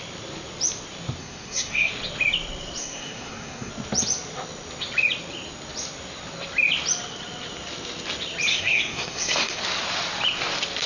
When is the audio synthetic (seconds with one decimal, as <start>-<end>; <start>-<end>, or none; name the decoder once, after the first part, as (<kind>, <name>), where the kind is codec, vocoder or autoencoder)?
1.2-1.9 (codec, SNAC); 2.8-3.7; 8.5-9.6